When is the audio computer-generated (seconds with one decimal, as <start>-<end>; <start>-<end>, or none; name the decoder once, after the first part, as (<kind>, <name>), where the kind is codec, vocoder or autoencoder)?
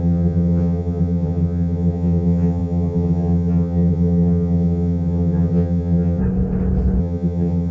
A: 0.0-6.2 (vocoder, HiFi-GAN); 7.0-7.7